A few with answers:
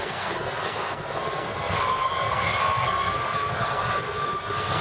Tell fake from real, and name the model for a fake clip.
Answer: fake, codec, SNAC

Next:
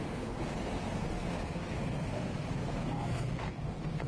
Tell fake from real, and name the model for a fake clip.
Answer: fake, codec, SNAC